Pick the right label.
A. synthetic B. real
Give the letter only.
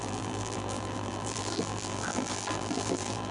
A